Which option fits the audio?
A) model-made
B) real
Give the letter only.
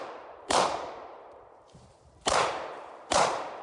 A